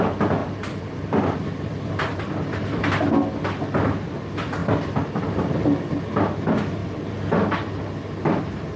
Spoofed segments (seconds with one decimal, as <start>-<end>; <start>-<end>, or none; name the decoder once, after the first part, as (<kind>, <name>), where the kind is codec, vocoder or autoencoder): 0.4-2.8 (vocoder, BigVGAN v2); 4.6-5.2